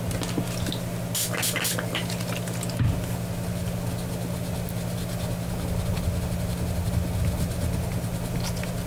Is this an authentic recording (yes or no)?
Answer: yes